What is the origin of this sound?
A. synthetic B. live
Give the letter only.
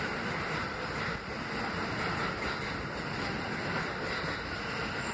B